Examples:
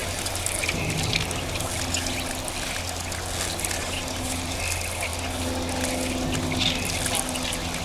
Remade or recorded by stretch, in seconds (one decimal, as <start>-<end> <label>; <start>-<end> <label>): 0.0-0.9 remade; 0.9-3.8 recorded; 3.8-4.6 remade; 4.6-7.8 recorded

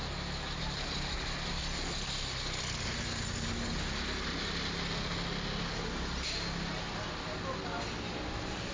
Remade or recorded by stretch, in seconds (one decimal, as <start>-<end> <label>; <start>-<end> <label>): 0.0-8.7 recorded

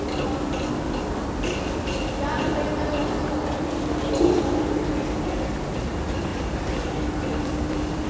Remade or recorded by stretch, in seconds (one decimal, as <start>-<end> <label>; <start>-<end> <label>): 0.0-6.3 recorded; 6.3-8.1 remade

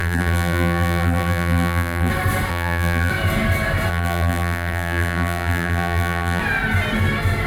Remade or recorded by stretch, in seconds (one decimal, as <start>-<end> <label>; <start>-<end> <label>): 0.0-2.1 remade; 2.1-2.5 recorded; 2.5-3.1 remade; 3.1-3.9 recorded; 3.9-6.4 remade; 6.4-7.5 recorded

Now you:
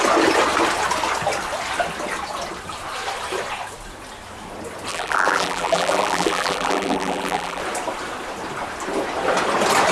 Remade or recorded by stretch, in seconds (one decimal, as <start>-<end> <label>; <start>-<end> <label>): 0.0-4.9 recorded; 4.9-7.6 remade; 7.6-9.9 recorded

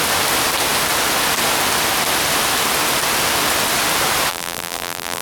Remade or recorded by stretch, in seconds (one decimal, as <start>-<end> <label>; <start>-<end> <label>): 0.0-4.3 recorded; 4.3-5.2 remade

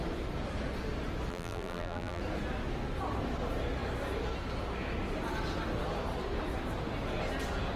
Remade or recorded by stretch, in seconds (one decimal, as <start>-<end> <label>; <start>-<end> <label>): 0.0-1.3 recorded; 1.3-2.2 remade; 2.2-7.8 recorded